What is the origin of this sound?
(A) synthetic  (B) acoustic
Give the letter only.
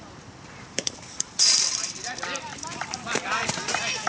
A